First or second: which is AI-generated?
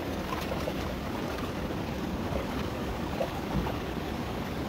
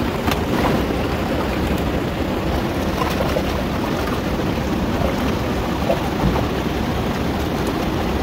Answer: first